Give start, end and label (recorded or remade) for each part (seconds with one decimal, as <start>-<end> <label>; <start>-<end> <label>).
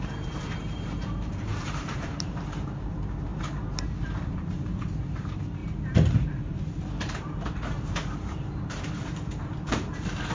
0.0-10.3 remade